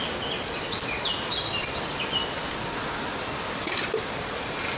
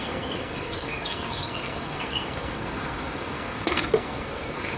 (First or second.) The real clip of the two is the first